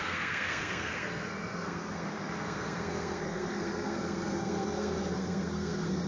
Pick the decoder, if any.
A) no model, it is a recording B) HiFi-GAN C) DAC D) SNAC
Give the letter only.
D